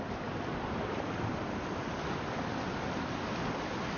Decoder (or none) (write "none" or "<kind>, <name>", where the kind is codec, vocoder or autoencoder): none